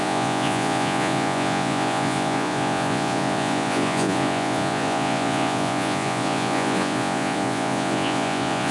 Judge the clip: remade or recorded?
remade